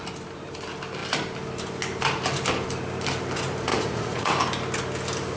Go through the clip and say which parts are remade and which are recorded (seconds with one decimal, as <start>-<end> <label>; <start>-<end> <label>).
0.0-3.7 recorded; 3.7-4.3 remade; 4.3-5.4 recorded